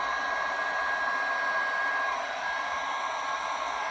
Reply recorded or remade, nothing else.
recorded